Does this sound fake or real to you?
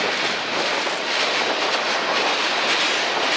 real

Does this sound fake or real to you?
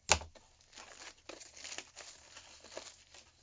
real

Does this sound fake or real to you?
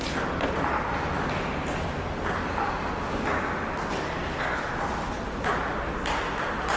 real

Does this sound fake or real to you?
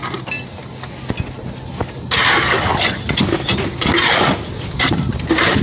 real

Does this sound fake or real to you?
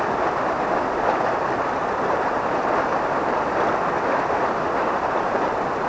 real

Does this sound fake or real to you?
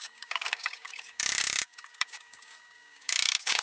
fake